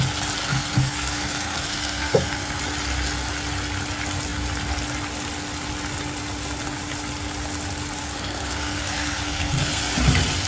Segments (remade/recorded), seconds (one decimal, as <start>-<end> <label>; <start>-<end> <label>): 0.0-0.4 recorded; 0.4-2.6 remade; 2.6-8.0 recorded; 8.0-9.8 remade; 9.8-10.5 recorded